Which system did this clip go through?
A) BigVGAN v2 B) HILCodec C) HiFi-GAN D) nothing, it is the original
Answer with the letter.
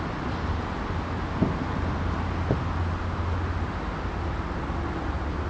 D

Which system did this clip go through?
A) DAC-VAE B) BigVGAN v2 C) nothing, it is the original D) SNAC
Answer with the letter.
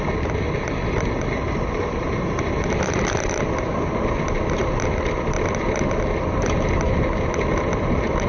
B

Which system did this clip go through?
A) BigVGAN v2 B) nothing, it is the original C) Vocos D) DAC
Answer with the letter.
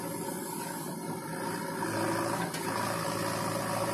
B